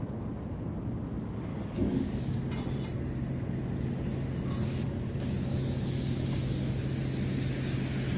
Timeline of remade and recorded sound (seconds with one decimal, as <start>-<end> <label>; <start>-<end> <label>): 0.0-1.5 recorded; 1.5-2.4 remade; 2.4-4.6 recorded; 4.6-6.9 remade; 6.9-8.2 recorded